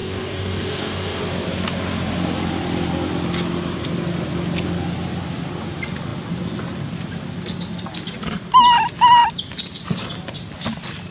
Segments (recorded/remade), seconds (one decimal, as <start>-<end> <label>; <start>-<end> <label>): 0.0-1.2 remade; 1.2-11.1 recorded